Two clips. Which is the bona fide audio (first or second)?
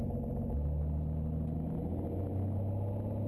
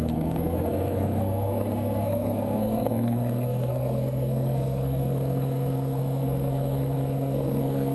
first